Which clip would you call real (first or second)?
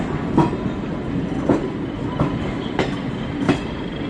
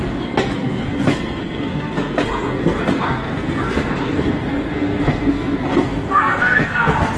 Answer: first